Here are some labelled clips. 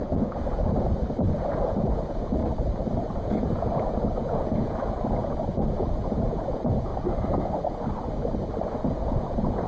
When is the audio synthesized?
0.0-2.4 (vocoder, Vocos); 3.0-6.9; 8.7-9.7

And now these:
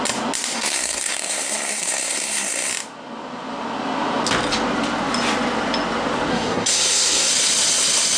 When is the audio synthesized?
0.5-2.7 (codec, SNAC); 6.3-7.3

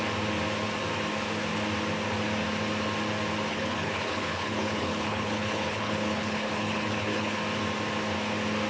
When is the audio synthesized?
3.5-7.4 (codec, HILCodec)

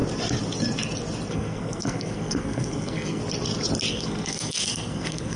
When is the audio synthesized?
1.3-3.2 (codec, SNAC); 3.9-5.4

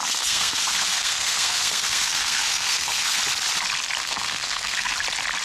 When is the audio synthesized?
0.0-3.2 (codec, SNAC); 4.0-4.9

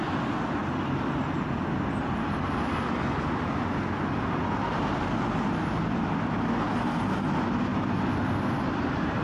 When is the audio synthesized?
none

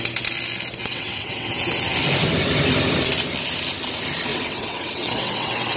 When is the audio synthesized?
0.8-1.5 (vocoder, WaveNeXt); 4.3-5.8